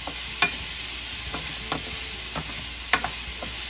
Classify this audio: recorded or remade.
recorded